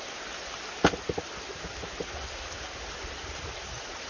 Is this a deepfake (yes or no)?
no